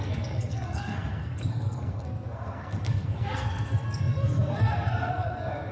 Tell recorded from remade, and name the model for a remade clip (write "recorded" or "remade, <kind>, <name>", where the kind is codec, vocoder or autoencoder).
remade, codec, SNAC